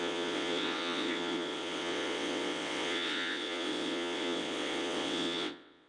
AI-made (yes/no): yes